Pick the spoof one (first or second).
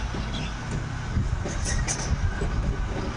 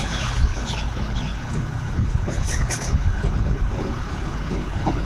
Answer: second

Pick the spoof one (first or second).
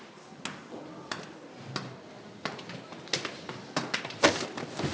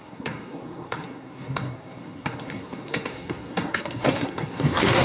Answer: second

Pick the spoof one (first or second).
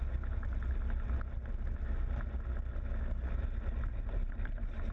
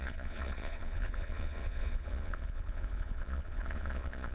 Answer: second